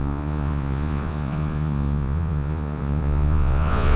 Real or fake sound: fake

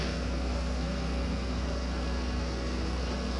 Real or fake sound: fake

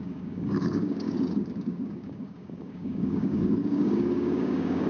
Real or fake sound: fake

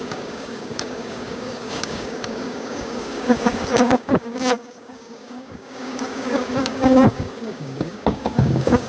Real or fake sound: fake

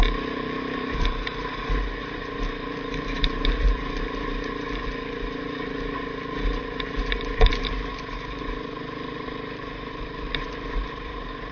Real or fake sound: fake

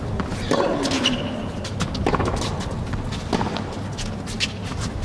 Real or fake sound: real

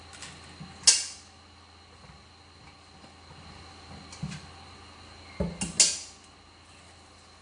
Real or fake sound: real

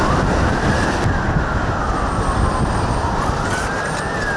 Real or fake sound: real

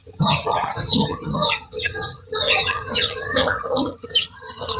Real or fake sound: fake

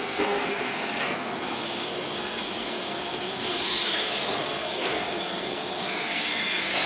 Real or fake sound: fake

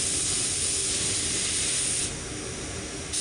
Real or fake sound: real